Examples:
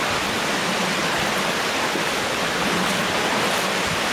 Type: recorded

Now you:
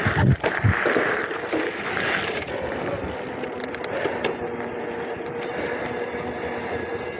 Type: recorded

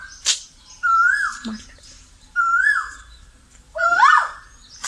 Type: remade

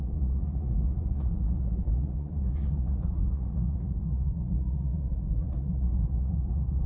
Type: remade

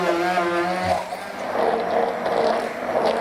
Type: recorded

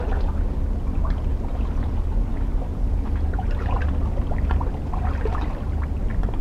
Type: recorded